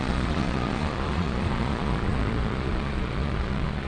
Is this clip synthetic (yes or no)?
yes